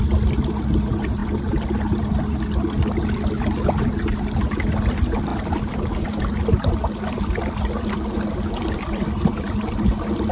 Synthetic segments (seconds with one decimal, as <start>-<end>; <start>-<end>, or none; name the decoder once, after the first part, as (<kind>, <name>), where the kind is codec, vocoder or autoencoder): none